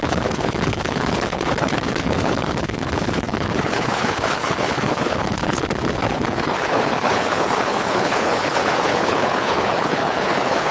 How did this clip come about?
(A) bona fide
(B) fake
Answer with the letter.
B